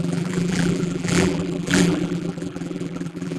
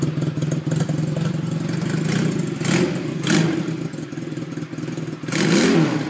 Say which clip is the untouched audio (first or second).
second